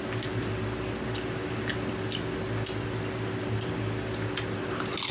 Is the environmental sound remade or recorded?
recorded